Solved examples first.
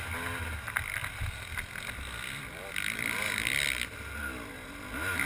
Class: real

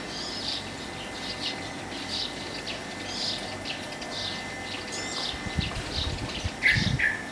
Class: real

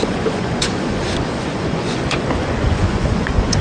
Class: fake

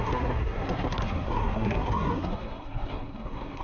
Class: fake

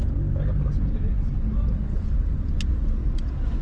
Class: real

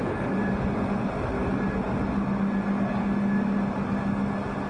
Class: real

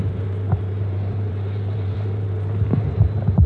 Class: fake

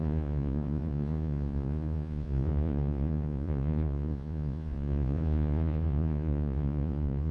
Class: fake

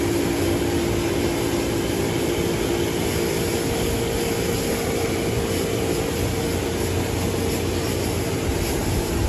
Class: real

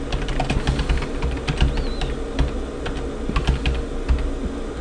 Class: real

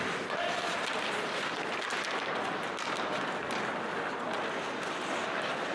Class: real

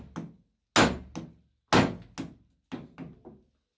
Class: real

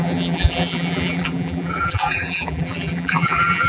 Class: fake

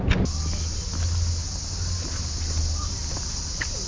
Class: real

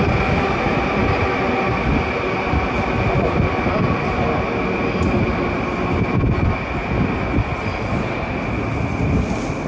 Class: real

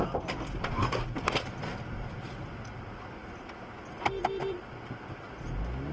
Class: real